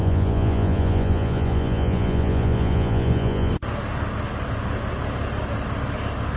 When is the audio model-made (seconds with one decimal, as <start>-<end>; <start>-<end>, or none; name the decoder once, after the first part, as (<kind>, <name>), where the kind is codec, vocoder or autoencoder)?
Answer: 0.0-3.5 (vocoder, Vocos)